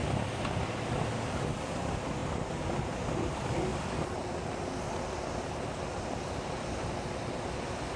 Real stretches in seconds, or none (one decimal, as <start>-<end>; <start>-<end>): 2.2-3.0; 3.7-7.4